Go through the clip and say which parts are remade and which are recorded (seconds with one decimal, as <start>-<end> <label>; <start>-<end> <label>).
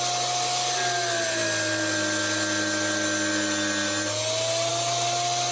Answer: 0.0-5.5 recorded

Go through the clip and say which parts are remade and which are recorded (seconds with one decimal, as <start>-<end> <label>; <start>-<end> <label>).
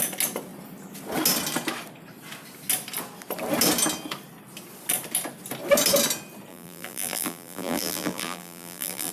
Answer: 0.0-6.5 recorded; 6.5-9.1 remade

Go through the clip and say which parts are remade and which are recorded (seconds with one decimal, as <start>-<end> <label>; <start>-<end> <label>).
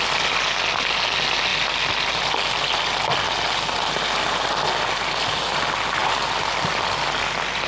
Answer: 0.0-7.7 recorded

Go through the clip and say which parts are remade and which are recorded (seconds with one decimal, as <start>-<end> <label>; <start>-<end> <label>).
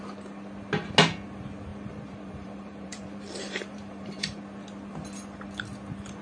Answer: 0.0-1.7 recorded; 1.7-4.4 remade; 4.4-6.2 recorded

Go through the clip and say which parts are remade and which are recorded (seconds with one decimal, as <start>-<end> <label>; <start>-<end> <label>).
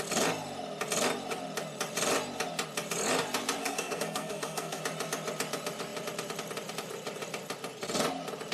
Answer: 0.0-3.6 recorded; 3.6-4.8 remade; 4.8-8.5 recorded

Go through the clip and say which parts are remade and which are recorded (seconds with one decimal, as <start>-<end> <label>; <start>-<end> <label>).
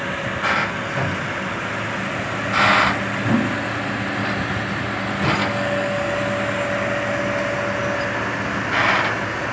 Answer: 0.0-5.4 recorded; 5.4-6.2 remade; 6.2-9.5 recorded